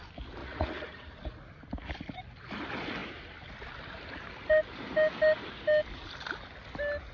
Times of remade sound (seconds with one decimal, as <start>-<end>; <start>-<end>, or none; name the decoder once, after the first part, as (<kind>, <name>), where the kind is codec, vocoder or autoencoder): 0.4-1.4 (vocoder, Vocos)